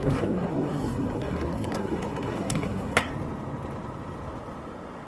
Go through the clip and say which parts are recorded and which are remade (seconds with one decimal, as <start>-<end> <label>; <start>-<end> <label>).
0.0-3.1 remade; 3.1-5.1 recorded